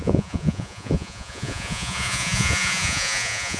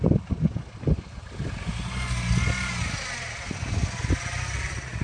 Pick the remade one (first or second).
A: first